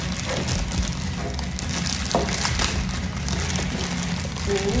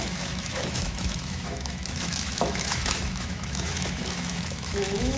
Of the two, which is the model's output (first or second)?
second